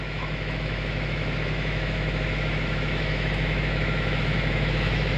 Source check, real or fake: fake